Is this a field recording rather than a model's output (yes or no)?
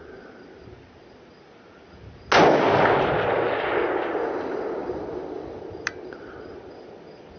yes